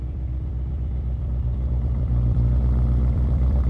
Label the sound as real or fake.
fake